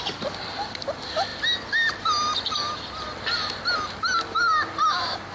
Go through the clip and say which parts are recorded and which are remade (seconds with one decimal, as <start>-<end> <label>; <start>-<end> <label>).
0.0-5.3 recorded